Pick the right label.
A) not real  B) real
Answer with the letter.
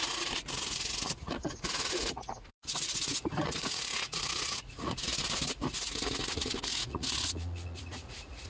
A